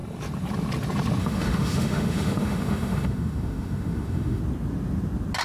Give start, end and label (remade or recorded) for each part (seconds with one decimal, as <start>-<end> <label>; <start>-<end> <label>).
0.0-1.2 recorded; 1.2-4.4 remade; 4.4-5.4 recorded